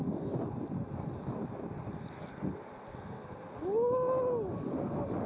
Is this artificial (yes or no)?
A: no